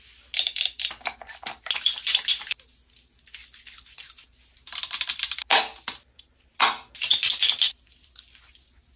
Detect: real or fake real